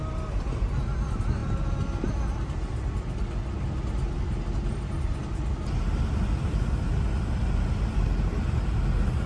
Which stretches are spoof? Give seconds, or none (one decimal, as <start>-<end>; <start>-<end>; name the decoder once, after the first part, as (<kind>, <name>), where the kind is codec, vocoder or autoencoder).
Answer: none